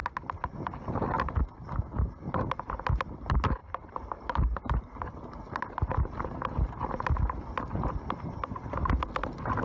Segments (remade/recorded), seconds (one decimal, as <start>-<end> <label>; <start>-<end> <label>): 0.0-3.6 recorded; 3.6-4.8 remade; 4.8-9.6 recorded

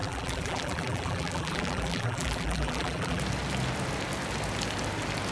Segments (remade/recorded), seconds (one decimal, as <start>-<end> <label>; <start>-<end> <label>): 0.0-3.2 remade; 3.2-5.3 recorded

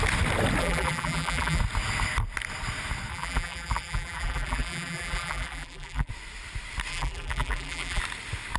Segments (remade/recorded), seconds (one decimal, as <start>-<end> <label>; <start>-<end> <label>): 0.0-0.6 recorded; 0.6-1.6 remade; 1.6-3.1 recorded; 3.1-6.1 remade; 6.1-6.9 recorded; 6.9-8.0 remade; 8.0-8.6 recorded

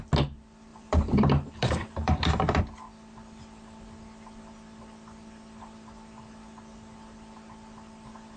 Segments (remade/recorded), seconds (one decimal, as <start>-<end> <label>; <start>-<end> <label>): 0.0-0.7 recorded; 0.7-2.6 remade; 2.6-8.4 recorded

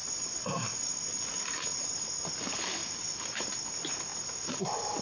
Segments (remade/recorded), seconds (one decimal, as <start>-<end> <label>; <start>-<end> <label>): 0.0-1.7 remade; 1.7-2.8 recorded; 2.8-3.4 remade; 3.4-5.0 recorded

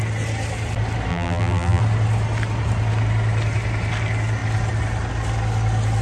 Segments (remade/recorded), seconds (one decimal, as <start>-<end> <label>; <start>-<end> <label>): 0.0-1.1 recorded; 1.1-1.8 remade; 1.8-6.0 recorded

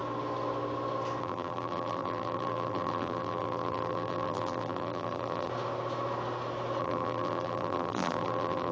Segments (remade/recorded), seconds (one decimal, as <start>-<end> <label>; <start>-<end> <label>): 0.0-1.2 recorded; 1.2-5.5 remade; 5.5-6.8 recorded; 6.8-8.7 remade

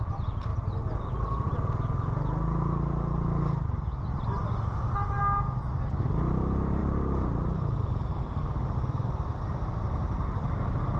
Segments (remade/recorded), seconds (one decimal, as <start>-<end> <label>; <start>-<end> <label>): 0.0-11.0 recorded